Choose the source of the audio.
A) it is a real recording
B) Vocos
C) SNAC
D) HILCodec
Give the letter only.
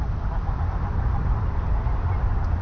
A